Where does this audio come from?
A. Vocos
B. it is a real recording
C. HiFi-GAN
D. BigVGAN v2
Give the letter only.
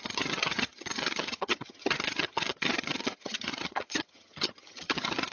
C